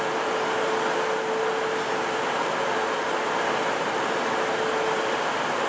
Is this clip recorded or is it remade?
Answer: recorded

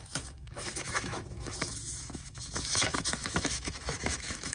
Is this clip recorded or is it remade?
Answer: remade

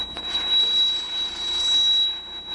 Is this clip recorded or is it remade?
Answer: recorded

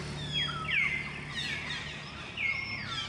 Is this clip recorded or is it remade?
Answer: recorded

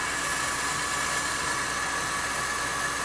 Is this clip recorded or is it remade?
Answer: recorded